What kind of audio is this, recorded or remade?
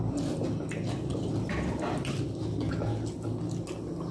recorded